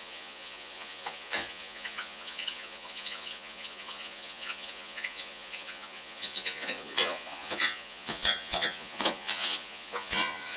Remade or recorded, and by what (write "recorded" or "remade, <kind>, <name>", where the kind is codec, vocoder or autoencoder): remade, vocoder, Vocos